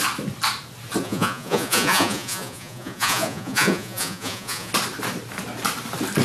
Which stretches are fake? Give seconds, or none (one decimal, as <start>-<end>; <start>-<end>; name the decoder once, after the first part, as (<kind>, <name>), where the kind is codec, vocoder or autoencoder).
1.0-4.7 (vocoder, Vocos)